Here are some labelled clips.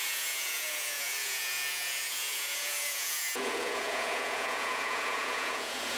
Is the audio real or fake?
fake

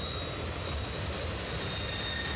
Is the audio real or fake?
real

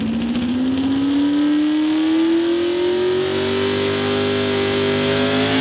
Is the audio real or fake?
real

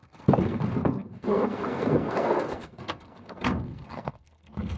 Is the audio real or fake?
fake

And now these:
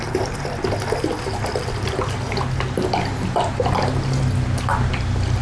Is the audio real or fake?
real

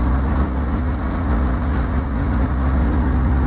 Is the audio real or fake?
fake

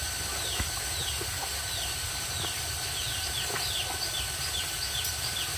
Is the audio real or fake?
real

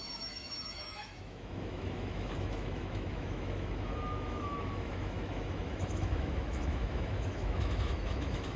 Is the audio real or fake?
fake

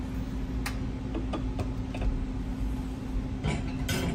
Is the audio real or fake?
real